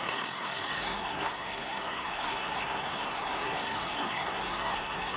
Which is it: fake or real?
fake